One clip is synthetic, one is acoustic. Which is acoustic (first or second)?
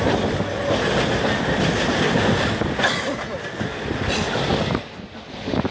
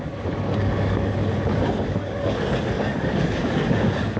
first